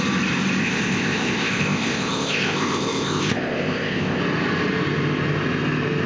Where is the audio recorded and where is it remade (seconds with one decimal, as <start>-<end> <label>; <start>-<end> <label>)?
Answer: 0.0-0.6 recorded; 0.6-4.2 remade; 4.2-6.1 recorded